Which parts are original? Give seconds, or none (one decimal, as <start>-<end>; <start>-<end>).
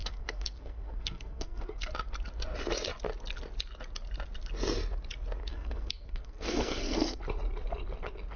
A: 1.9-5.4; 7.2-8.4